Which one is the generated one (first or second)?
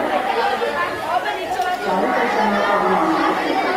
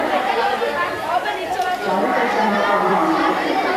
second